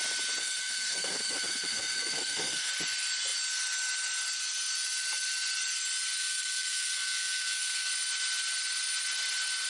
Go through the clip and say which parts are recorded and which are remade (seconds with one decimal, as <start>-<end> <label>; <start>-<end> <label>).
0.0-0.4 recorded; 0.4-2.7 remade; 2.7-6.2 recorded; 6.2-7.9 remade; 7.9-9.7 recorded